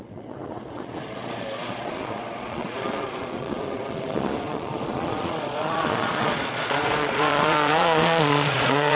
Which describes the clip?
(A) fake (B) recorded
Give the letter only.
A